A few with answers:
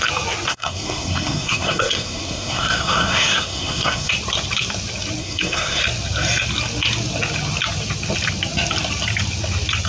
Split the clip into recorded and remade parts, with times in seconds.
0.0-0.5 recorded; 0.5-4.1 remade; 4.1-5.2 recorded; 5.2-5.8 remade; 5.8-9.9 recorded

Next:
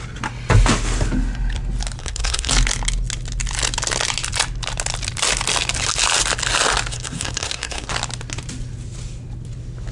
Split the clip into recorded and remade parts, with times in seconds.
0.0-2.0 recorded; 2.0-2.5 remade; 2.5-6.9 recorded; 6.9-7.9 remade; 7.9-9.9 recorded

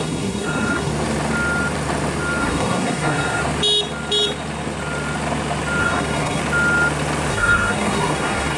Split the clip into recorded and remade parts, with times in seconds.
0.0-0.9 remade; 0.9-2.4 recorded; 2.4-3.4 remade; 3.4-5.8 recorded; 5.8-6.4 remade; 6.4-7.3 recorded; 7.3-8.6 remade

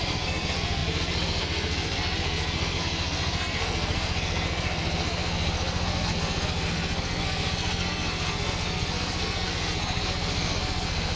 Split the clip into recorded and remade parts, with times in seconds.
0.0-11.2 remade